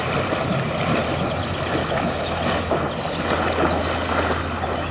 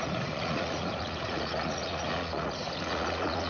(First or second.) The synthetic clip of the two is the second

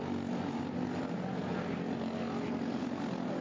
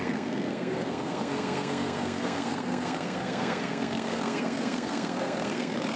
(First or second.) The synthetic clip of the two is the second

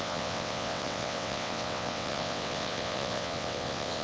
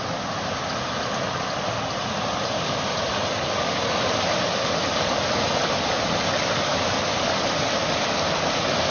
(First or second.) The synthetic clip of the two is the first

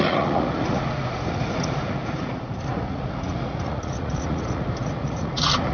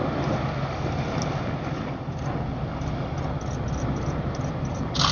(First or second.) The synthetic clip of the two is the first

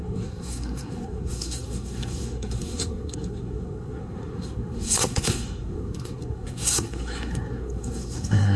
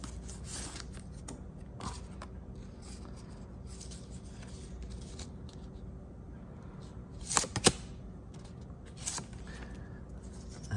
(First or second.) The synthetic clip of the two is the first